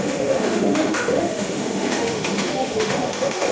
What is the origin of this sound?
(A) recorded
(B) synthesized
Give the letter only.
B